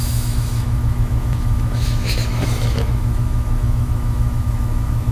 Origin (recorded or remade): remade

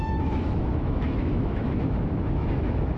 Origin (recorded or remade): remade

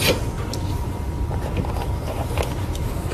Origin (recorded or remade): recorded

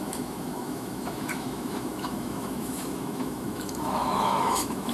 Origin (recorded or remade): remade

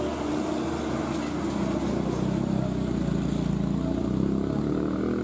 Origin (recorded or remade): recorded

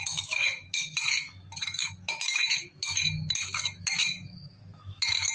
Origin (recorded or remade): remade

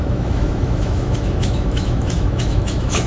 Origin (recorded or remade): remade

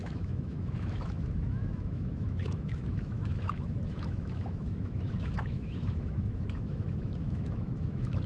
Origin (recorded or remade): remade